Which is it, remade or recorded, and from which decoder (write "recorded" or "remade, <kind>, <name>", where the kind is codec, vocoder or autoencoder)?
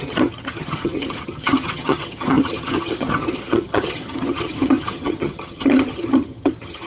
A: remade, vocoder, HiFi-GAN